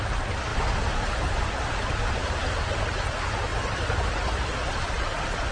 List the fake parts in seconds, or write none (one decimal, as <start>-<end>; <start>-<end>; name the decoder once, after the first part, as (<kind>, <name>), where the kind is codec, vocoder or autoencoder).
none